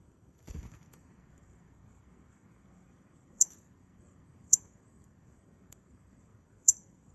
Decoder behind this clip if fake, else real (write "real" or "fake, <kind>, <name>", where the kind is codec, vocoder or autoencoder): fake, codec, SNAC